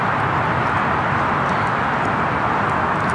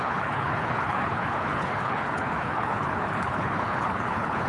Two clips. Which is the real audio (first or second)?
first